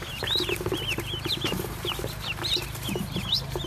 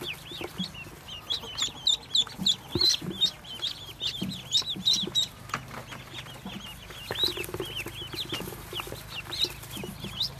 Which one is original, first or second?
second